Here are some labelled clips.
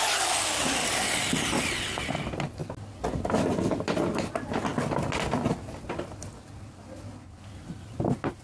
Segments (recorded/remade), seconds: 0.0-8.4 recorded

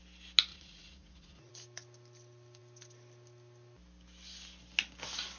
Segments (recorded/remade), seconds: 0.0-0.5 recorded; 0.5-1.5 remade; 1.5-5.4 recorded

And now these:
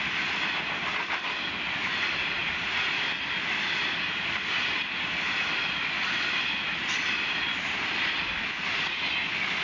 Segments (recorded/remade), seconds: 0.0-9.6 recorded

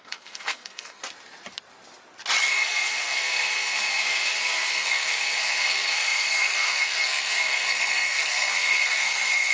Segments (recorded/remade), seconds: 0.0-1.0 remade; 1.0-2.5 recorded; 2.5-9.5 remade

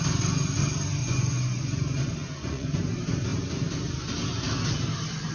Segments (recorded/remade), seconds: 0.0-1.0 recorded; 1.0-2.8 remade; 2.8-5.3 recorded

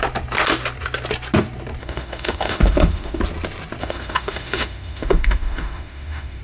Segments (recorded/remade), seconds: 0.0-1.8 recorded; 1.8-3.2 remade; 3.2-3.8 recorded; 3.8-6.4 remade